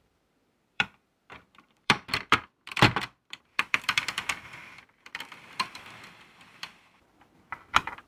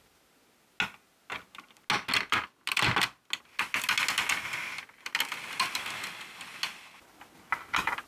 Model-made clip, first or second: first